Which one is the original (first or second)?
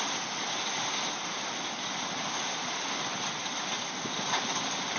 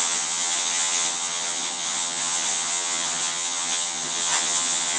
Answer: first